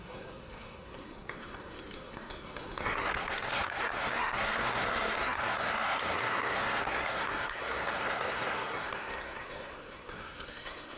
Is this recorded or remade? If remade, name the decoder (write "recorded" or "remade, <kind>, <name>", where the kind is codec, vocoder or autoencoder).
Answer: remade, codec, SNAC